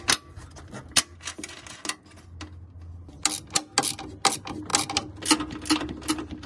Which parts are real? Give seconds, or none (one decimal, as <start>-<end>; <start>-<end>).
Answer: 0.0-6.5